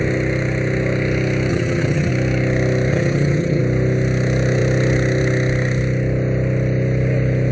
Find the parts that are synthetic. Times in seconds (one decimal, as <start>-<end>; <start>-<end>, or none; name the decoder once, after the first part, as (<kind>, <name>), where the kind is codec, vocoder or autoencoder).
1.5-2.1 (vocoder, HiFi-GAN); 2.9-3.6